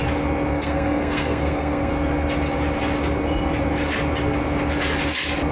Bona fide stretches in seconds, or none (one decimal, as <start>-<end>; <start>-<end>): 0.0-0.5; 1.9-5.5